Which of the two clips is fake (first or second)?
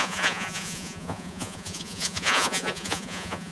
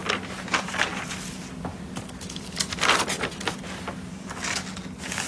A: first